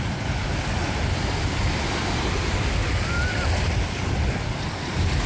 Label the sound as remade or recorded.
recorded